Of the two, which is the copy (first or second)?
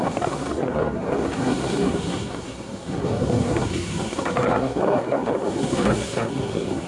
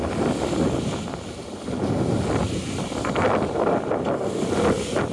first